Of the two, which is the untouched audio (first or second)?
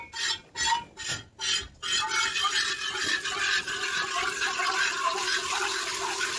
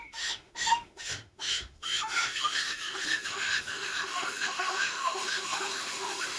first